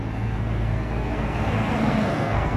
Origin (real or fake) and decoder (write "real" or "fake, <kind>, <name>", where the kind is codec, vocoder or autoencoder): fake, codec, SNAC